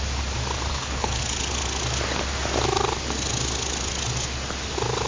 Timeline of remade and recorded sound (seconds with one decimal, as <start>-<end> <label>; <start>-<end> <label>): 0.0-0.7 recorded; 0.7-1.2 remade; 1.2-5.1 recorded